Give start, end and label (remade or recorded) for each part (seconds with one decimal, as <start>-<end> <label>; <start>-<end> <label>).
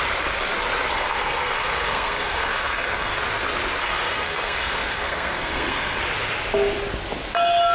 0.0-0.9 recorded; 0.9-3.2 remade; 3.2-3.8 recorded; 3.8-6.0 remade; 6.0-7.7 recorded